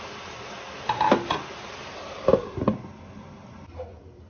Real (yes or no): yes